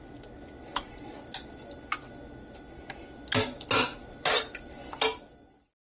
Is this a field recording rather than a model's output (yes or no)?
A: yes